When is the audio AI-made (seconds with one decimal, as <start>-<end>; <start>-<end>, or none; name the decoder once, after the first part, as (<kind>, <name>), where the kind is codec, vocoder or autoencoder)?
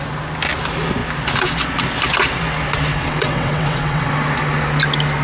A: 2.9-4.1 (vocoder, WaveNeXt)